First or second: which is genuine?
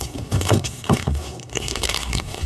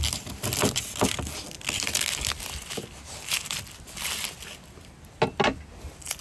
second